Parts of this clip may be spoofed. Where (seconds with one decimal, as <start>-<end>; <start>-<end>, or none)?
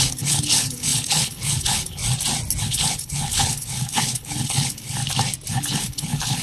0.0-2.0; 2.6-5.0; 5.5-6.4